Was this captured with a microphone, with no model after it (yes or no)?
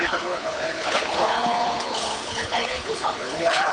no